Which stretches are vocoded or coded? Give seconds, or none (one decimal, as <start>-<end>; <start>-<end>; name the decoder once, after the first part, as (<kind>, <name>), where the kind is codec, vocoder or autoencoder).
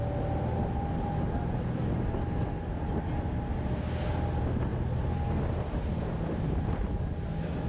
none